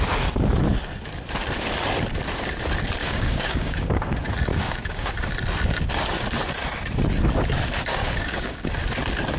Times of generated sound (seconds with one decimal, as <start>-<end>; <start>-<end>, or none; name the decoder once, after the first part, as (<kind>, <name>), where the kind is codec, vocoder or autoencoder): 3.0-4.1 (codec, DAC); 4.5-5.1; 7.9-8.7